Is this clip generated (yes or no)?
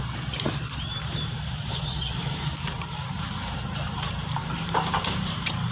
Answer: yes